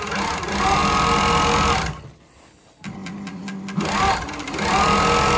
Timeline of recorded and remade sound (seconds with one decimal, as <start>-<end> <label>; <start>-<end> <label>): 0.0-5.4 recorded